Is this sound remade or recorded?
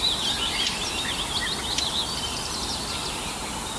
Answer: recorded